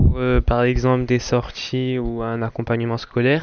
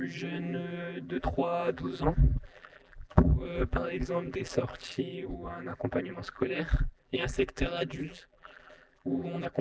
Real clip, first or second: first